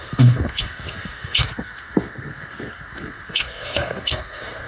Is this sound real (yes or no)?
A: no